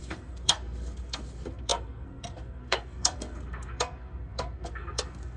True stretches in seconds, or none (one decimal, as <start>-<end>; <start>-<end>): none